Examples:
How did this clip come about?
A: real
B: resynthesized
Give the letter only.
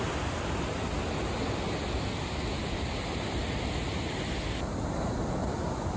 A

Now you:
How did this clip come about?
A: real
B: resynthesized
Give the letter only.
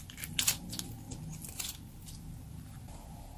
A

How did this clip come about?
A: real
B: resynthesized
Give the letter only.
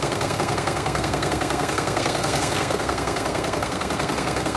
B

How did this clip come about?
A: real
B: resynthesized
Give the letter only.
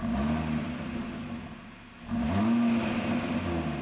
A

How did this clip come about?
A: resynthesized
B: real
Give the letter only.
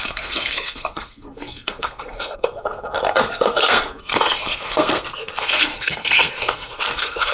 A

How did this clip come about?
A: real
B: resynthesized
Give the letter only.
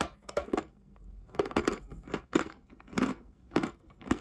B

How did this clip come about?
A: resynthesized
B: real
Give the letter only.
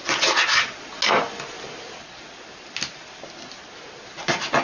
B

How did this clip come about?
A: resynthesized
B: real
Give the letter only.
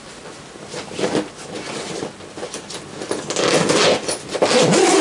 B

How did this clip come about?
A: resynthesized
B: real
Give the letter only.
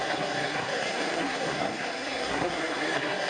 A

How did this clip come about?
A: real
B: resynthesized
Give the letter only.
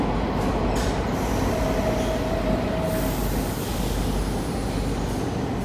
A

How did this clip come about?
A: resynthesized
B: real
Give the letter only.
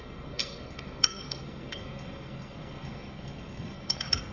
A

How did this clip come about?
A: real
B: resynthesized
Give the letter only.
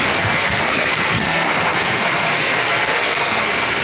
B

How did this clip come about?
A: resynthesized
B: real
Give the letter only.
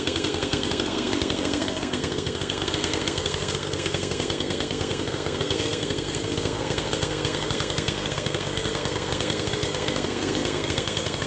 A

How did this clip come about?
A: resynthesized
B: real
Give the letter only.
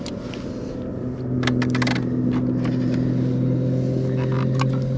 B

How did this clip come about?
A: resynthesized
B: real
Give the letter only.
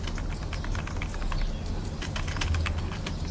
B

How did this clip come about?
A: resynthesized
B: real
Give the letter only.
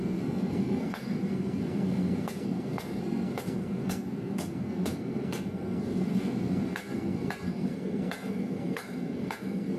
A